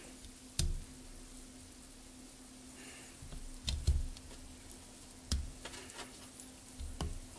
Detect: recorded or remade recorded